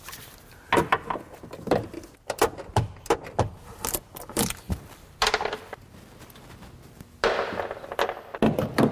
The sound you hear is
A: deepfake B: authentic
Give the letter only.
B